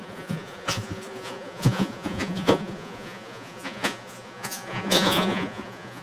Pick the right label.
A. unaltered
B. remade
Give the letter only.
B